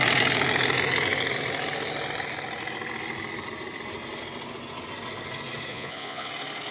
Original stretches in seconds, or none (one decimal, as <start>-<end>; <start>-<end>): 0.0-5.7; 6.3-6.7